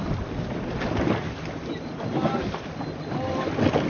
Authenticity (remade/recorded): recorded